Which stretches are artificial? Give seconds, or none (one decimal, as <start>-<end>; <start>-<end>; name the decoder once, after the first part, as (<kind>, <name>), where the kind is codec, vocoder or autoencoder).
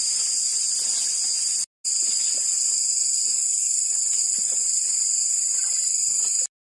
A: none